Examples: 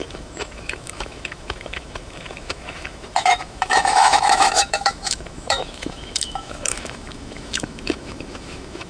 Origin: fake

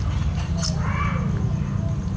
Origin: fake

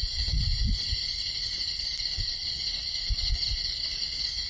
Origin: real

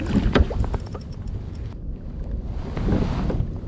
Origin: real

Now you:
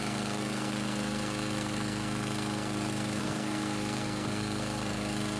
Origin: fake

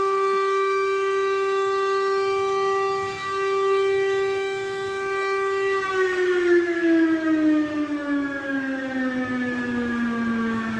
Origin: fake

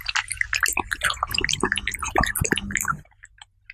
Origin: real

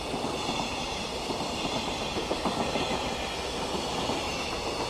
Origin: real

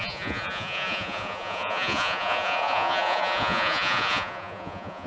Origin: fake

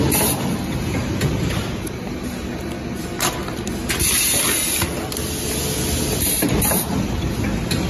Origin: real